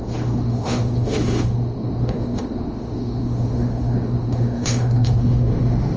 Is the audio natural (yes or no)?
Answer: no